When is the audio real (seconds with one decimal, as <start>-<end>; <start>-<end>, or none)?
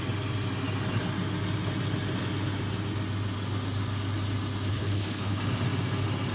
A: 0.0-4.7; 5.4-6.3